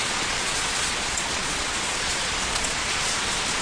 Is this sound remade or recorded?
remade